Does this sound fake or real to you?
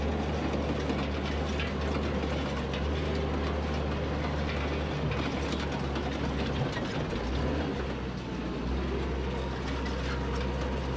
real